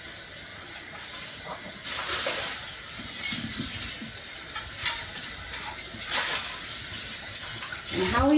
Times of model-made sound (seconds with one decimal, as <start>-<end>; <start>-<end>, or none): 0.5-1.1